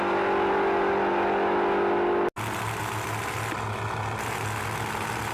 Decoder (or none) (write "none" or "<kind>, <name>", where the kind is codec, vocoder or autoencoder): none